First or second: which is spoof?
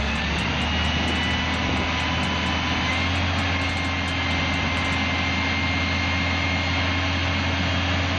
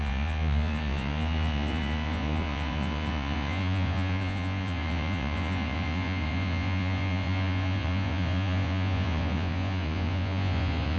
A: second